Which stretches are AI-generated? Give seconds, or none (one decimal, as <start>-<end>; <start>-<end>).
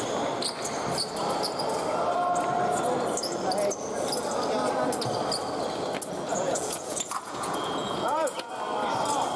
6.3-8.5